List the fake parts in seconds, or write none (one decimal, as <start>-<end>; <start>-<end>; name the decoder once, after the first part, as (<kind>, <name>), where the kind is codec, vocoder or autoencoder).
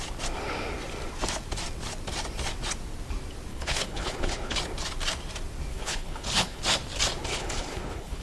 3.5-4.6 (codec, HILCodec); 5.7-6.6; 7.3-8.2